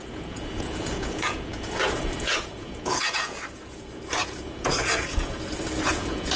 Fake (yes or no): yes